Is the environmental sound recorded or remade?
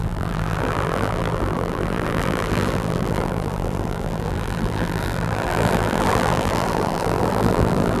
remade